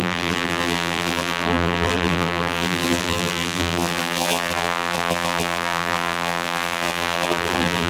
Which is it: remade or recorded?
remade